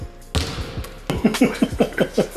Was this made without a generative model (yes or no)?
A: yes